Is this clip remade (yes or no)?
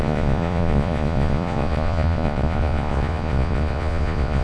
yes